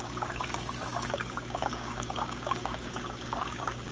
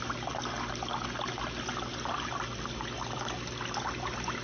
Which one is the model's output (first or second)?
first